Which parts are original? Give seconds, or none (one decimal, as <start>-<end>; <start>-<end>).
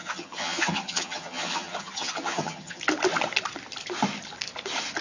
2.8-5.0